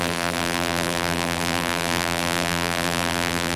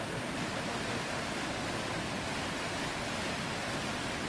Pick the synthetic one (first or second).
first